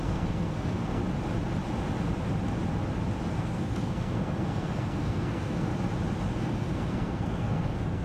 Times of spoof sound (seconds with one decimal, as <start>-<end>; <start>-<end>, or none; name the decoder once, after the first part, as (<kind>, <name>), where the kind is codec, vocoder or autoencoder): 0.0-1.0 (codec, SNAC); 3.3-5.7; 6.4-8.0